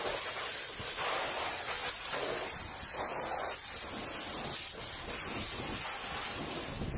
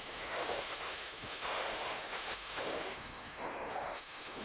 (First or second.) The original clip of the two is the first